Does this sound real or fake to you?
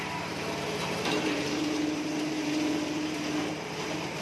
fake